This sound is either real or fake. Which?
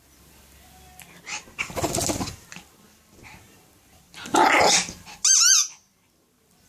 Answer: real